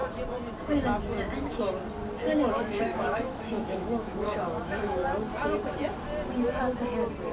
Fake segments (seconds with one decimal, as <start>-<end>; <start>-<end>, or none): 2.5-5.0